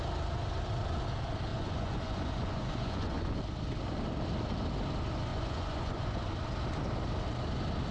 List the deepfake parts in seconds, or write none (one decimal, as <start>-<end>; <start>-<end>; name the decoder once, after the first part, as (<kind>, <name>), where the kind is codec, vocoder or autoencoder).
1.5-3.4 (vocoder, Vocos); 5.3-6.3